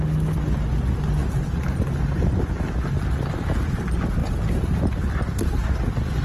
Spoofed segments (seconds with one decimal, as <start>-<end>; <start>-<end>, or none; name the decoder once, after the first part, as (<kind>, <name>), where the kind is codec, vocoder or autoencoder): 1.2-1.8 (vocoder, BigVGAN v2); 4.2-4.8